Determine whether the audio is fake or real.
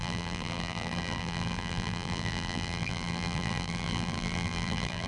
fake